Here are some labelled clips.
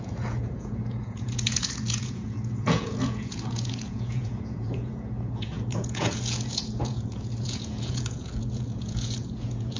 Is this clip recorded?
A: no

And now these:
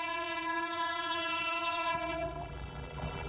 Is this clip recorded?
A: no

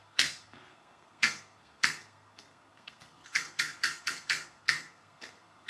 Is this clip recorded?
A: no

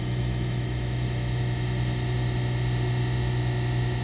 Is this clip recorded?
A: yes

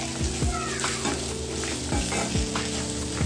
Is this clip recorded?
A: yes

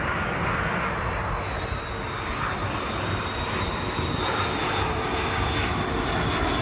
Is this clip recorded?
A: yes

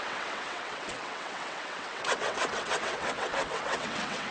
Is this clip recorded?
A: no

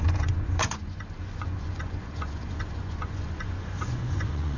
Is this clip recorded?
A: no